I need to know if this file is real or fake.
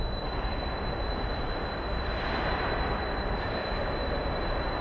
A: fake